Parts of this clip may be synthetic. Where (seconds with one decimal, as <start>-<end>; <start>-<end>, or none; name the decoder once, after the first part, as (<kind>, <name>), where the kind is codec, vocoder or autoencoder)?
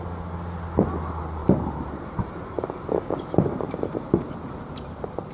1.4-4.6 (vocoder, BigVGAN v2)